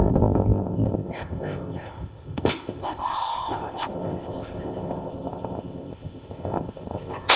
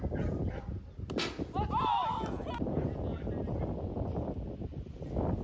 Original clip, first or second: second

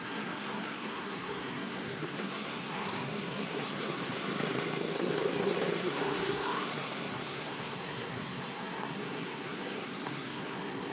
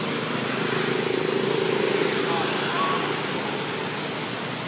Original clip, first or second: second